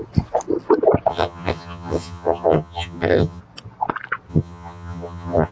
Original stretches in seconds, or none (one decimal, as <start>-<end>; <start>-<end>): 0.0-1.1; 3.4-4.3